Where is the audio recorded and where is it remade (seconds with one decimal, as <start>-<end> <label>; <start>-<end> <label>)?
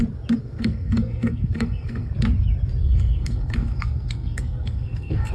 0.0-0.4 recorded; 0.4-2.1 remade; 2.1-2.8 recorded; 2.8-5.3 remade